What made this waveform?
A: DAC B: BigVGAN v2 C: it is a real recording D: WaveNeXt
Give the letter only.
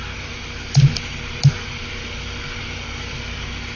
C